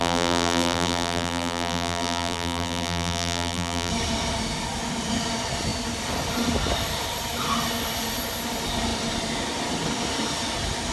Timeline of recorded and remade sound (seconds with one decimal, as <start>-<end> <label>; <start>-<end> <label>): 0.0-3.9 remade; 3.9-10.9 recorded